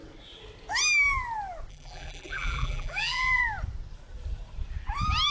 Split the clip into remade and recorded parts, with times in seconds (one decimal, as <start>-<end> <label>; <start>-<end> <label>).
0.0-1.7 recorded; 1.7-3.4 remade; 3.4-5.3 recorded